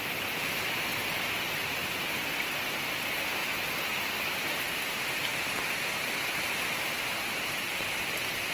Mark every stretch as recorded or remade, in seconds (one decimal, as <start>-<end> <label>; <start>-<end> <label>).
0.0-0.9 remade; 0.9-2.0 recorded; 2.0-3.4 remade; 3.4-4.8 recorded; 4.8-5.3 remade; 5.3-7.7 recorded; 7.7-8.5 remade